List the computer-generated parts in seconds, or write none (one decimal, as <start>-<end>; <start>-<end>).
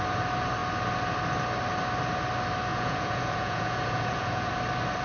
2.7-4.5